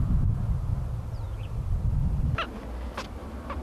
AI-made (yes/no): no